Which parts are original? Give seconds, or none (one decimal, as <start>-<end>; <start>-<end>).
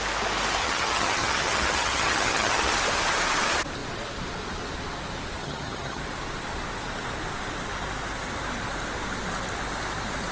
0.0-0.6; 2.7-5.4; 6.0-10.3